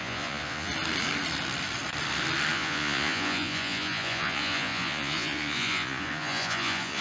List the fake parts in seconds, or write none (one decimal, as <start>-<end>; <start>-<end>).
0.0-0.7; 2.5-7.0